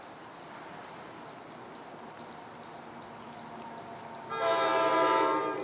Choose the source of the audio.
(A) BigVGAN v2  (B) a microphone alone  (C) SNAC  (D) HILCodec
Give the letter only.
B